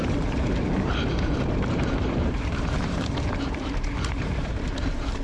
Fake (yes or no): yes